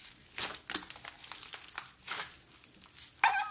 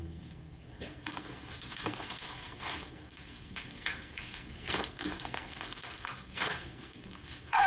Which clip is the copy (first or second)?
second